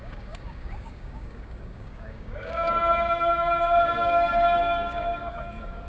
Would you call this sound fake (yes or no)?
yes